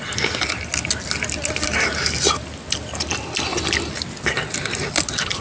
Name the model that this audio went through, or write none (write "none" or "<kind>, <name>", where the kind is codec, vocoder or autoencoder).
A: none